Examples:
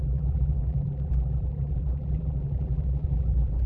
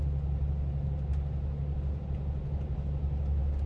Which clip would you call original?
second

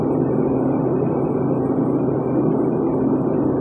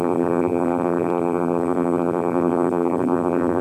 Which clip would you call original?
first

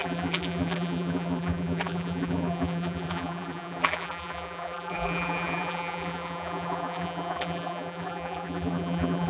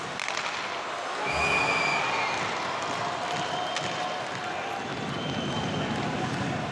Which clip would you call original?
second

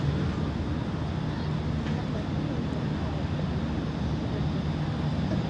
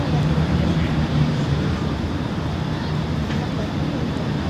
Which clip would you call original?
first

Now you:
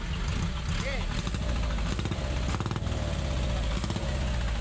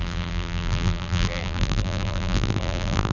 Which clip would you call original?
first